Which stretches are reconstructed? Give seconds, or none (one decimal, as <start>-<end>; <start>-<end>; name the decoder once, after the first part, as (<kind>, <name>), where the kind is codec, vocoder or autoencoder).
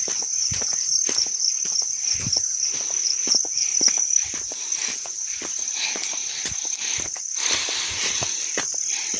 none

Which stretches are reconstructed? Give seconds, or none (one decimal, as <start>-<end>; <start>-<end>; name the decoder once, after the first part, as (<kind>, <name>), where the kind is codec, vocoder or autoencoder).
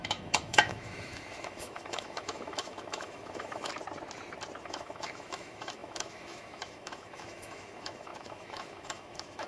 0.0-3.7 (autoencoder, DAC-VAE); 4.6-9.5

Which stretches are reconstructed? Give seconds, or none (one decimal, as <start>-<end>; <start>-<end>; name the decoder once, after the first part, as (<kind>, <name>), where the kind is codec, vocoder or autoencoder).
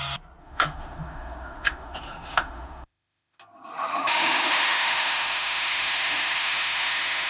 0.4-3.4 (autoencoder, DAC-VAE); 3.9-7.3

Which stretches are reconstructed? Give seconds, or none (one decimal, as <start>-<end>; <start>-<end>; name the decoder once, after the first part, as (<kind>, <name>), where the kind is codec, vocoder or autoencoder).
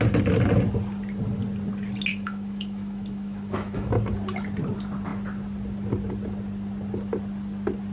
2.1-4.0 (autoencoder, DAC-VAE)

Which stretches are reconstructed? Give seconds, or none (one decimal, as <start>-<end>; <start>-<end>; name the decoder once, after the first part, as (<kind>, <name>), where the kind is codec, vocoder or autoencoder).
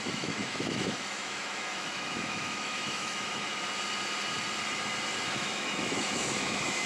0.0-3.5 (autoencoder, DAC-VAE); 5.3-6.9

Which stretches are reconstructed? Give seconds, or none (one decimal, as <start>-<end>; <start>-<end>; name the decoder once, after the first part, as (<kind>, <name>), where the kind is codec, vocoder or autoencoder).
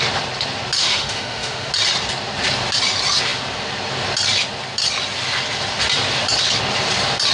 0.8-1.7 (autoencoder, DAC-VAE)